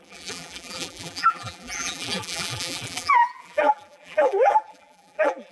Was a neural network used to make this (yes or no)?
yes